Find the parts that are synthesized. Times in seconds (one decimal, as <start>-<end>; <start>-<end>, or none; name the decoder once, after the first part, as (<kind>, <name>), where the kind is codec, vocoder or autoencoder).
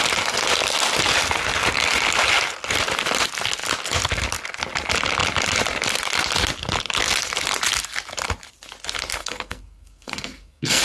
9.2-10.8 (codec, SNAC)